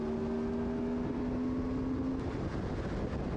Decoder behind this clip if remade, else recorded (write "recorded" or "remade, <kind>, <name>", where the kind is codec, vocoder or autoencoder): recorded